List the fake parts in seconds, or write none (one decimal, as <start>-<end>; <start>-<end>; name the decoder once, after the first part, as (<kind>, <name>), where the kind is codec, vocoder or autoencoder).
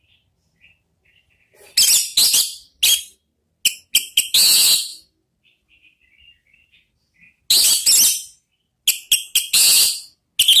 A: none